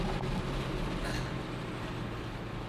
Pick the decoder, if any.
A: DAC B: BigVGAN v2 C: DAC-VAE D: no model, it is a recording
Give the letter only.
D